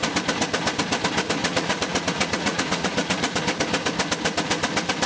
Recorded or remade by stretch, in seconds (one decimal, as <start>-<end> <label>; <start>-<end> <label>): 0.0-1.4 recorded; 1.4-3.4 remade; 3.4-5.1 recorded